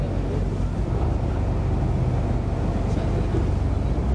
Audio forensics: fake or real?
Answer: real